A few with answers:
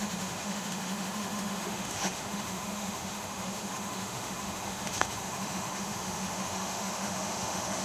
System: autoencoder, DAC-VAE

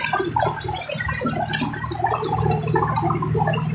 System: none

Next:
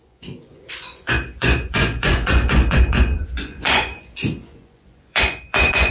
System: vocoder, Vocos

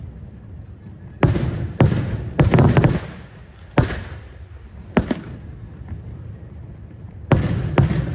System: none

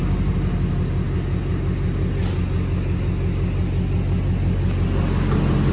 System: none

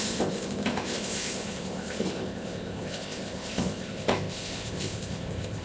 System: codec, ZipCodec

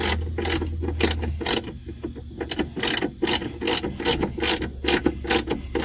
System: none